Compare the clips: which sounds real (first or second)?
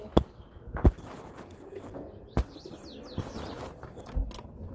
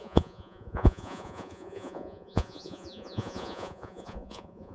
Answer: first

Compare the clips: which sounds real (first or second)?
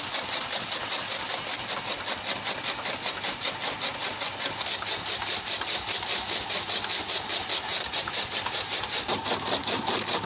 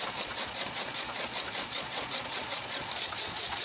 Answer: first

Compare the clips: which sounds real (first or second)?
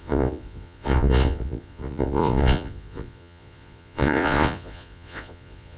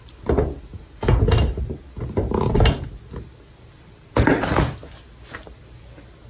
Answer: second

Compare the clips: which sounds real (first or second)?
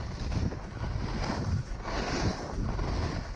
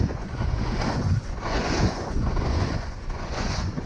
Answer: first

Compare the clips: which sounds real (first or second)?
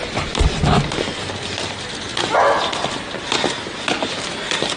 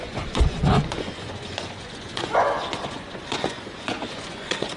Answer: first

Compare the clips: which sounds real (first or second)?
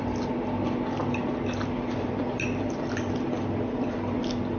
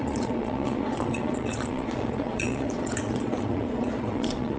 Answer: first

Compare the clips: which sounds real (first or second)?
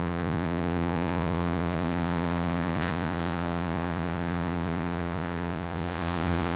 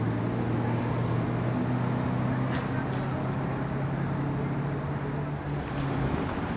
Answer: second